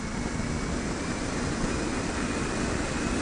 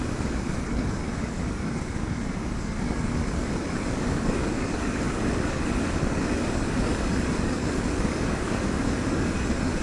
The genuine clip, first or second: first